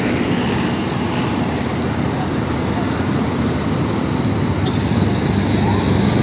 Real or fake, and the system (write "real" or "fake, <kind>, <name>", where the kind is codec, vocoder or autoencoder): real